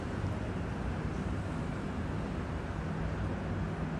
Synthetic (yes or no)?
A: no